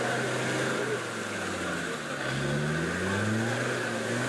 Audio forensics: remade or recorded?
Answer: recorded